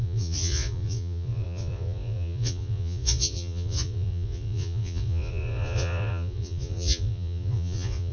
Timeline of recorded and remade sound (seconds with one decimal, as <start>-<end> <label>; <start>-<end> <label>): 0.0-8.1 remade

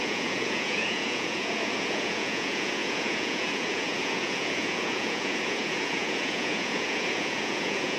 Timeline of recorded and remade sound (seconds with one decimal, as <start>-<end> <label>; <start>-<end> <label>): 0.0-8.0 remade

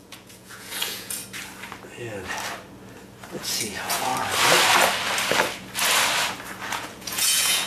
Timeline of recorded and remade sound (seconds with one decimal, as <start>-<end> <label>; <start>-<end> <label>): 0.0-1.2 remade; 1.2-3.3 recorded; 3.3-4.1 remade; 4.1-6.7 recorded; 6.7-7.7 remade

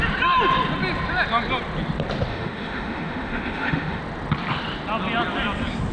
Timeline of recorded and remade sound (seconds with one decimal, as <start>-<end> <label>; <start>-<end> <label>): 0.0-2.3 recorded; 2.3-4.0 remade; 4.0-5.9 recorded

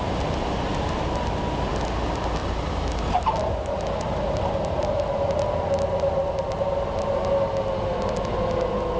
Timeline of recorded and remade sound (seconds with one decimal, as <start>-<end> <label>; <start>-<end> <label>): 0.0-9.0 recorded

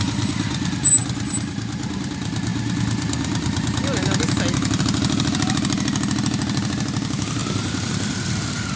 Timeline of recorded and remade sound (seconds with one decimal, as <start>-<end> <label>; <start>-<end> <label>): 0.0-7.4 recorded; 7.4-7.9 remade; 7.9-8.8 recorded

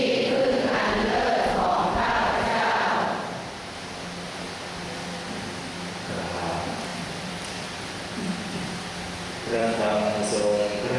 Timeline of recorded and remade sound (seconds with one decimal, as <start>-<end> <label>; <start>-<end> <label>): 0.0-2.2 recorded; 2.2-3.0 remade; 3.0-6.9 recorded; 6.9-9.9 remade; 9.9-11.0 recorded

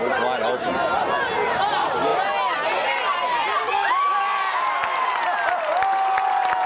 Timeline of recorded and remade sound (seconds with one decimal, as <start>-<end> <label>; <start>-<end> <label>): 0.0-6.7 recorded